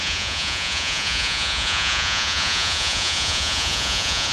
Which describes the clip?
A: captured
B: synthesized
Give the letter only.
B